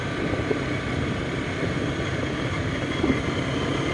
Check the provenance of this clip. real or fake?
real